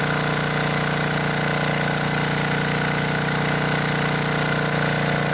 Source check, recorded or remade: recorded